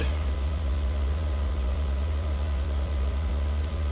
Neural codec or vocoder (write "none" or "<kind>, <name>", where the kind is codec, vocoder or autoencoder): vocoder, Vocos